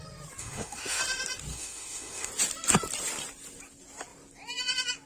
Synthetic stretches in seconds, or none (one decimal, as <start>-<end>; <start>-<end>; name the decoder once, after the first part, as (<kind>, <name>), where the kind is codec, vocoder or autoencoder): 0.4-1.0 (autoencoder, DAC-VAE); 1.5-2.3